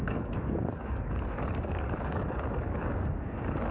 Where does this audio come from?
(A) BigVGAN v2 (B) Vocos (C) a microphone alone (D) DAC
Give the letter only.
D